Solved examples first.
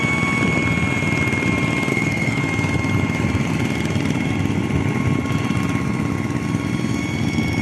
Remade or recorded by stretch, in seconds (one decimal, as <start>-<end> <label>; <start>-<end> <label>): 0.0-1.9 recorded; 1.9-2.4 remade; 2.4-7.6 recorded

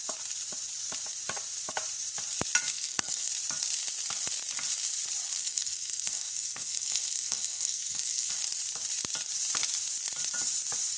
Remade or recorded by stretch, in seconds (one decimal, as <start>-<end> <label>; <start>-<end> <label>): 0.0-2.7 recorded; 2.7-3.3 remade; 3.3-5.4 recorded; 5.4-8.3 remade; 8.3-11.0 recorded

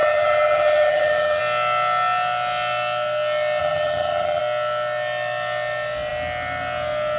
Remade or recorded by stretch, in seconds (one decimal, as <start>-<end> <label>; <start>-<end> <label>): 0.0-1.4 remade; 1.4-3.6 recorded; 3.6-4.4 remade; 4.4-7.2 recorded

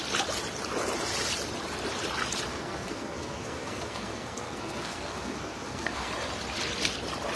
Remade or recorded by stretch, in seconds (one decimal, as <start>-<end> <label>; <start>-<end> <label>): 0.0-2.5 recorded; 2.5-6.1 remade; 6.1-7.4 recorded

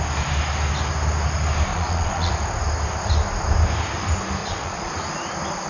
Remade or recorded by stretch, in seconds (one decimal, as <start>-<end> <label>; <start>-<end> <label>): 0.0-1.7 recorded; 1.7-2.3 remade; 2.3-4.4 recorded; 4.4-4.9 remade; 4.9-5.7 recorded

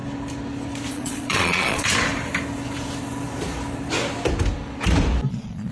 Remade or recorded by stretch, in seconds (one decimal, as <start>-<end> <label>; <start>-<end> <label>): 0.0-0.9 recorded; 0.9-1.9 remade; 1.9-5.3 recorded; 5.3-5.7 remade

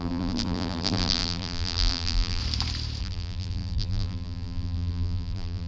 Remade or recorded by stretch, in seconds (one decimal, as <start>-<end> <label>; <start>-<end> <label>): 0.0-2.4 remade; 2.4-3.0 recorded; 3.0-5.7 remade

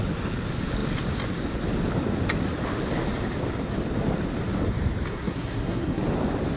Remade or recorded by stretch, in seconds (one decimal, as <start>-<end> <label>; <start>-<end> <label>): 0.0-5.1 recorded; 5.1-6.0 remade; 6.0-6.6 recorded